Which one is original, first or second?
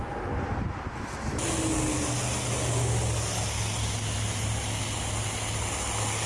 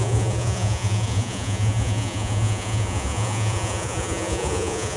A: first